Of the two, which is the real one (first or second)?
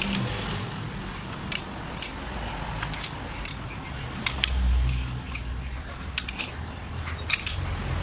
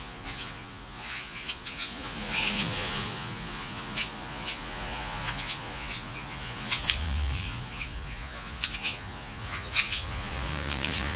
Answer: first